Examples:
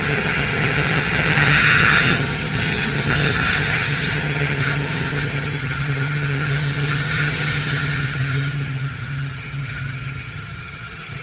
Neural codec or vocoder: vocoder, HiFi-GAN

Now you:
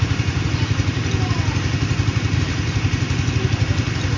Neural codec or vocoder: none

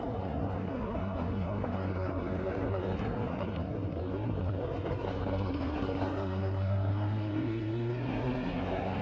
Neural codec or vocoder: codec, SNAC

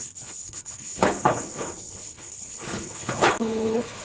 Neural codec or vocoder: codec, HILCodec